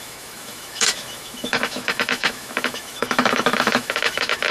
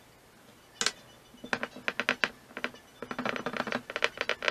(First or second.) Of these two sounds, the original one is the second